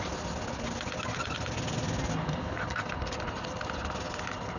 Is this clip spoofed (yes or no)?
no